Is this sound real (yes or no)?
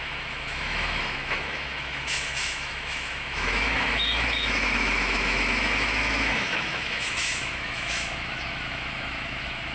no